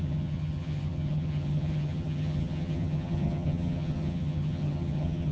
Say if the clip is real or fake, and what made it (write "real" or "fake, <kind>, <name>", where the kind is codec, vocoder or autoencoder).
fake, vocoder, HiFi-GAN